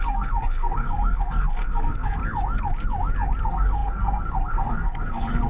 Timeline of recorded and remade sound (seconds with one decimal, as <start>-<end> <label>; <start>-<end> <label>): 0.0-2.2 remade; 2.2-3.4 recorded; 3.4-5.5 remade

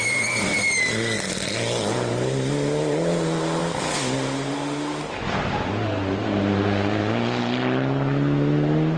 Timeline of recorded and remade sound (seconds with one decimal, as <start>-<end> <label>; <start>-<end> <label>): 0.0-9.0 recorded

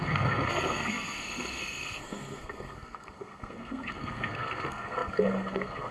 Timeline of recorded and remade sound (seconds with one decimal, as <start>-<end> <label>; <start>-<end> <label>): 0.0-5.9 remade

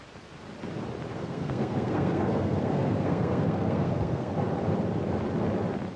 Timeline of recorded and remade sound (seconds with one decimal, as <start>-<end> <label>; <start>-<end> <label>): 0.0-1.1 recorded; 1.1-4.3 remade; 4.3-6.0 recorded

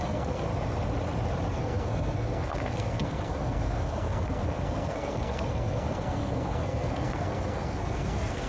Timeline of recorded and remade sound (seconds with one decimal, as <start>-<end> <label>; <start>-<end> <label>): 0.0-0.5 remade; 0.5-1.5 recorded; 1.5-8.5 remade

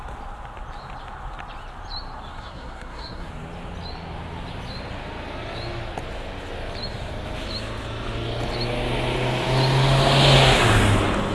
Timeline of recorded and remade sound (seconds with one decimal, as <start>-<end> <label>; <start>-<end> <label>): 0.0-2.3 recorded; 2.3-3.3 remade; 3.3-11.3 recorded

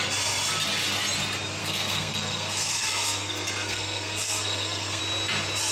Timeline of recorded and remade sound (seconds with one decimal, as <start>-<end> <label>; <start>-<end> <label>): 0.0-1.6 recorded; 1.6-5.0 remade; 5.0-5.7 recorded